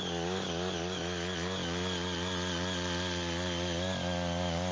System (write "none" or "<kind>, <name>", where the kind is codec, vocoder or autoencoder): none